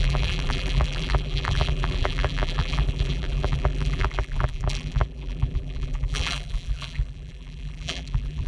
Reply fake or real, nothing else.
fake